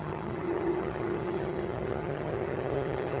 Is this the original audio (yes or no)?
no